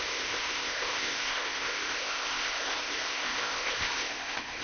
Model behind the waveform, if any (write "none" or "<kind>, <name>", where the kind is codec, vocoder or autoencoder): codec, ZipCodec